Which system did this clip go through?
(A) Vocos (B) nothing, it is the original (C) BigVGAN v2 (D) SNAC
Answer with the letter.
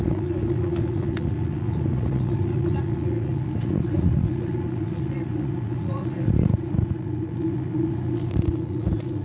A